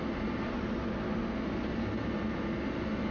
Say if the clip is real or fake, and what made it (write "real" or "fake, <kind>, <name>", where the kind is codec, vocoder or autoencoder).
real